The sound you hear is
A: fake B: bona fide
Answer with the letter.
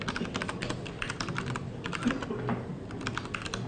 B